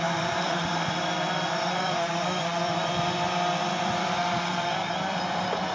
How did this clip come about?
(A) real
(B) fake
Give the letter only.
B